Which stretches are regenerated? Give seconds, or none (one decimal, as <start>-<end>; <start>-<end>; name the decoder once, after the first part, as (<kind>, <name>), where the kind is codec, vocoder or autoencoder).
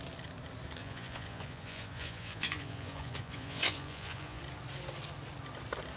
0.8-4.4 (vocoder, Vocos)